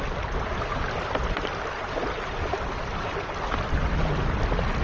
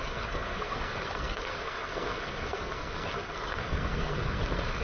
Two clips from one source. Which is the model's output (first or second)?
second